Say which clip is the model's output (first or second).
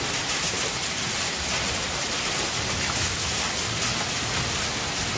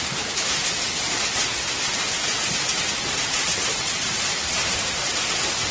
second